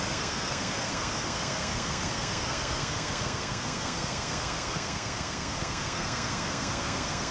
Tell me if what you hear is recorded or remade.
remade